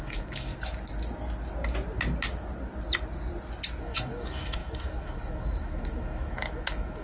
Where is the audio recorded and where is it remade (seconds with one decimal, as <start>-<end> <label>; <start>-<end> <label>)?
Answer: 0.0-0.5 remade; 0.5-3.8 recorded; 3.8-7.0 remade